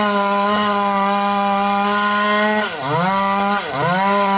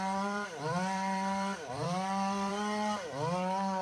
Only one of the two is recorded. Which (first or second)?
first